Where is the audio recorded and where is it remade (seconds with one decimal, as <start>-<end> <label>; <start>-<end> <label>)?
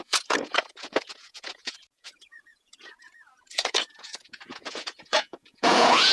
0.0-6.1 remade